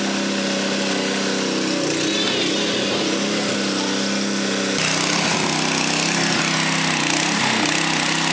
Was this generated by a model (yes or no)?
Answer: no